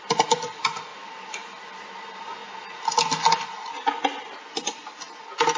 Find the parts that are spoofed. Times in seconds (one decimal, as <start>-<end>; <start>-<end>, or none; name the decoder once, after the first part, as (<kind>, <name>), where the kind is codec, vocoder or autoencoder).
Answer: none